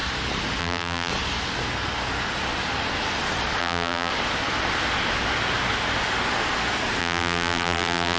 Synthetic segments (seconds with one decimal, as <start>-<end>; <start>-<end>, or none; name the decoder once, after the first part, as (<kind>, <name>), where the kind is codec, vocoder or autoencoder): 0.6-1.1 (vocoder, BigVGAN v2); 3.6-4.1; 7.0-8.2